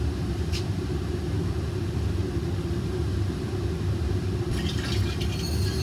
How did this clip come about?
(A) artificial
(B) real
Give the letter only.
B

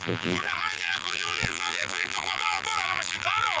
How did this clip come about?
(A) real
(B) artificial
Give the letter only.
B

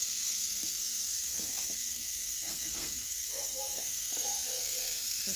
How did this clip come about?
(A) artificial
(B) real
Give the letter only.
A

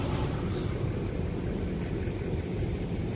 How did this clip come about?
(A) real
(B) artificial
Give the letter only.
A